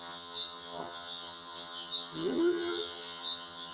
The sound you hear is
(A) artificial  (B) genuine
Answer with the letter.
A